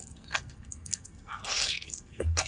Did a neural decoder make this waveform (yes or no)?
yes